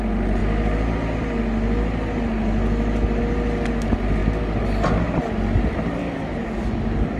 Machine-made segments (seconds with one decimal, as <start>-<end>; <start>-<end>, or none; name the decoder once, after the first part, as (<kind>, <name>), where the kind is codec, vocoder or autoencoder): 6.0-7.2 (codec, DAC)